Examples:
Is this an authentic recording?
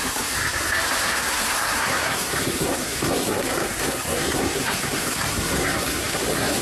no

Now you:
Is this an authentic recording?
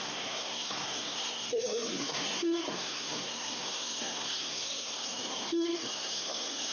no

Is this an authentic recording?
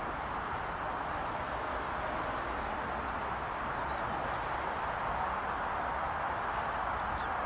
yes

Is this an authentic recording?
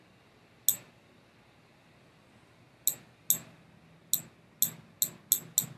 yes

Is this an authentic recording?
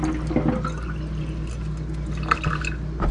yes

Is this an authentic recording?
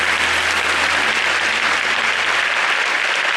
yes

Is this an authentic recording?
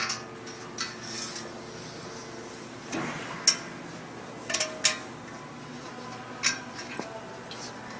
yes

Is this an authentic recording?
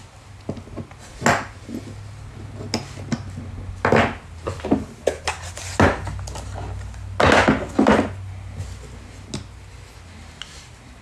yes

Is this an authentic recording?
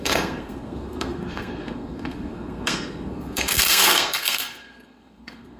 no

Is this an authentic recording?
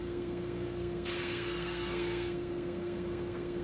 no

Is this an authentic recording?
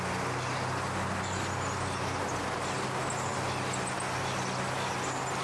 yes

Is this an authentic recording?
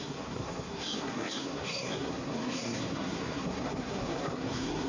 no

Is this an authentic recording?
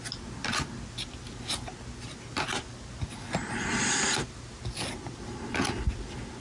yes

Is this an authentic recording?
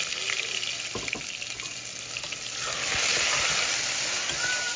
yes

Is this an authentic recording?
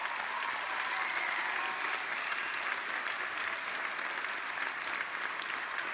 yes